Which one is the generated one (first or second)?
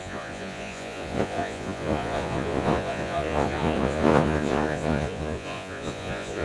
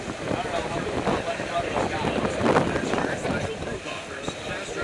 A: first